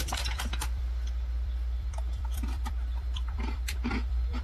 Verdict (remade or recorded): remade